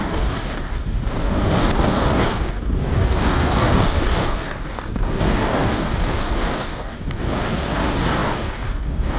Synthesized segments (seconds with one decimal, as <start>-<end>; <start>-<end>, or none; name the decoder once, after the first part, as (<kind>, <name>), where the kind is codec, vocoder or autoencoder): 0.0-9.2 (codec, DAC)